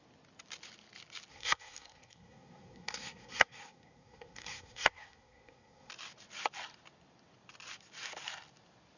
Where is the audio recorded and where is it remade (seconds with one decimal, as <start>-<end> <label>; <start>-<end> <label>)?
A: 0.0-1.3 recorded; 1.3-5.9 remade; 5.9-9.0 recorded